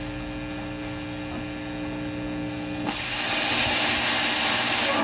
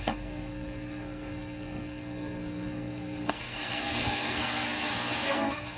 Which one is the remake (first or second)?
second